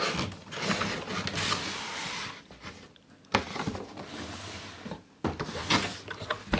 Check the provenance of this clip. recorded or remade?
recorded